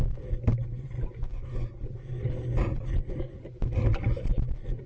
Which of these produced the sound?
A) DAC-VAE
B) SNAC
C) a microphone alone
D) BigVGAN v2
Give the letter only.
C